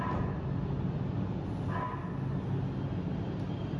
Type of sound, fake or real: real